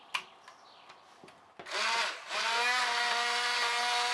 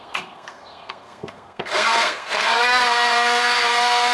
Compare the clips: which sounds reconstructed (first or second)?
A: second